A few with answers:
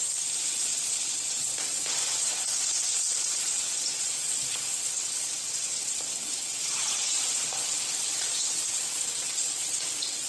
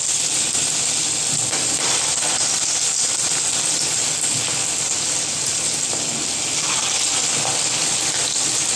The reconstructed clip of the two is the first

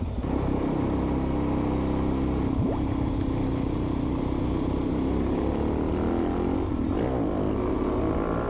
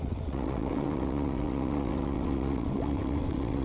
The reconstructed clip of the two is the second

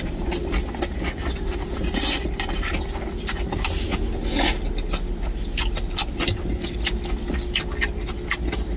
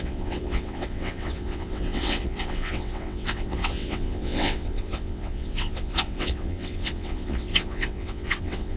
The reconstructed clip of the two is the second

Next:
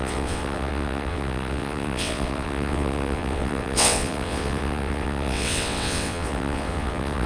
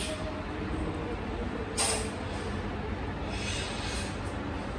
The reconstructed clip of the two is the first